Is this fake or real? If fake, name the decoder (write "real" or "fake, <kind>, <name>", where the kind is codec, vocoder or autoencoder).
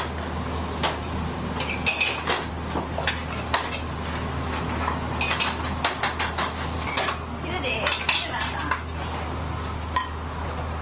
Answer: real